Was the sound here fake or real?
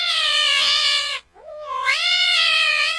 fake